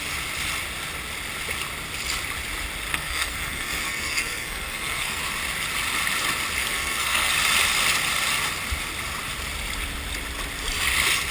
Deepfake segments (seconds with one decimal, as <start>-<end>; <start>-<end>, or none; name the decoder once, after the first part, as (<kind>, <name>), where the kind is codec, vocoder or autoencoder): 2.9-5.2 (codec, SNAC); 6.6-7.3